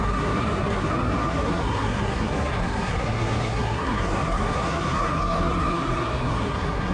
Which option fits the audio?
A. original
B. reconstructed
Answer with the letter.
B